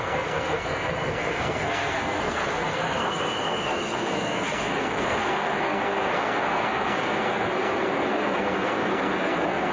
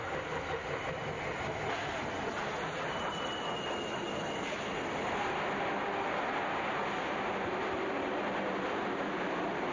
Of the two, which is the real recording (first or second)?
second